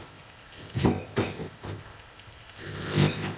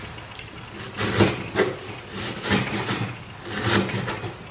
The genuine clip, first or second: second